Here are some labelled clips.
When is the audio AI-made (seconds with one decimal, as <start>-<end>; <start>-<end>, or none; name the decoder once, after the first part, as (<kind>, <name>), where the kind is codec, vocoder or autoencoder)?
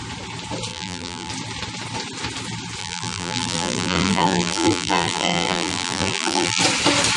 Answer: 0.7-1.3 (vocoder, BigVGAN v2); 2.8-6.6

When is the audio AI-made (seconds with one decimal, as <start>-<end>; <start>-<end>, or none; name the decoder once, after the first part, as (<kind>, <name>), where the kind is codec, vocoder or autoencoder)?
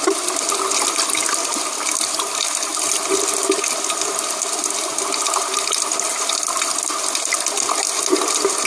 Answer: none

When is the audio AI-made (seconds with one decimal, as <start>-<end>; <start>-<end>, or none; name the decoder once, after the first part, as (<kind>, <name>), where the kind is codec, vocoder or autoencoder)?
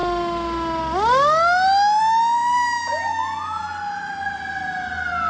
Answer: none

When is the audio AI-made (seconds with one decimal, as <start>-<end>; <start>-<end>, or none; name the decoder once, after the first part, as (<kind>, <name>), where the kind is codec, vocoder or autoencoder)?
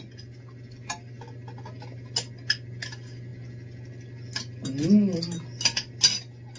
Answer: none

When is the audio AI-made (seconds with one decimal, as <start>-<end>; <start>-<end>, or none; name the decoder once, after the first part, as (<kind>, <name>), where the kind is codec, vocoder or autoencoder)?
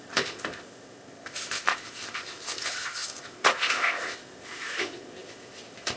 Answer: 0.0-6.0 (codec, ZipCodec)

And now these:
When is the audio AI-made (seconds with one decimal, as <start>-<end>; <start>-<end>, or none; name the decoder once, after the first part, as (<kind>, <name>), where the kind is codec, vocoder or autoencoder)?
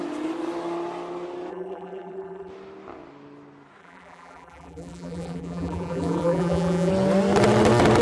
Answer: 1.5-2.5 (vocoder, BigVGAN v2); 3.8-6.9